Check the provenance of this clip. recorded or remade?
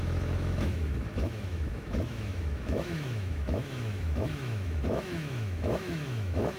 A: remade